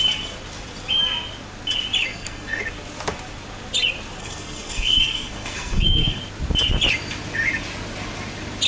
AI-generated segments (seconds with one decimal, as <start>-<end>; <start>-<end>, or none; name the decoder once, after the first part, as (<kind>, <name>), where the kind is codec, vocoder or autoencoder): 2.1-2.6 (codec, SNAC); 4.2-6.2